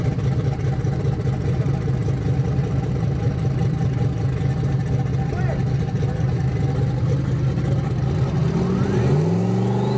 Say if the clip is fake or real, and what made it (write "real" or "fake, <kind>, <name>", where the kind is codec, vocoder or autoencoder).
real